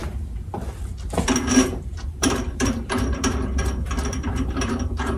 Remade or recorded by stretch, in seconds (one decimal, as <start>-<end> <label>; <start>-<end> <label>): 0.0-1.5 recorded; 1.5-5.2 remade